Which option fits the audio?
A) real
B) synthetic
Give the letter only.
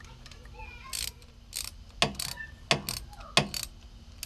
A